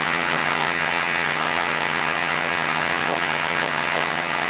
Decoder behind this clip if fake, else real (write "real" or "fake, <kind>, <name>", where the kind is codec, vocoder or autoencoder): fake, vocoder, HiFi-GAN